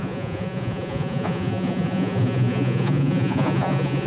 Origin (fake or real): fake